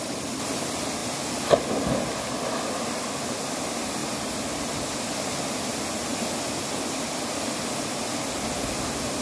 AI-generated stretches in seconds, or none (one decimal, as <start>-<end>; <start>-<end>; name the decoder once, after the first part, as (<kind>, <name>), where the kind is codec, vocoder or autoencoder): 4.0-5.5 (vocoder, BigVGAN v2)